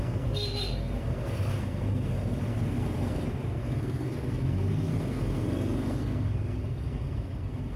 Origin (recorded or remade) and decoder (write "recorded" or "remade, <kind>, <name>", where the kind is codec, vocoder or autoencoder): remade, codec, SNAC